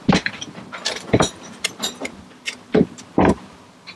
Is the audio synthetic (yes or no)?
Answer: no